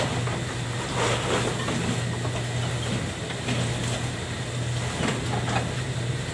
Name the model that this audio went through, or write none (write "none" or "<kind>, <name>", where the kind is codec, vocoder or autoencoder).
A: none